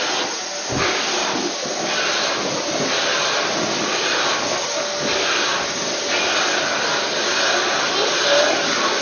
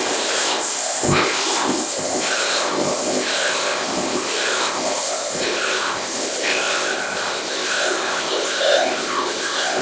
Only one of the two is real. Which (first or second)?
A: first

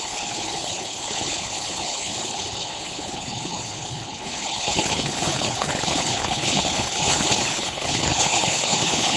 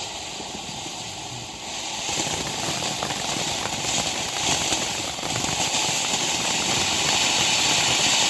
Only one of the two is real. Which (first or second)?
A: second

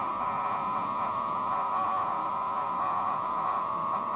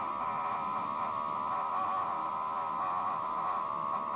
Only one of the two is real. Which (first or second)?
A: second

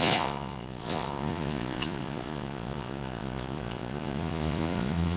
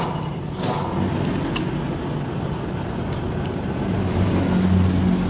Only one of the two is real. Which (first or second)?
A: second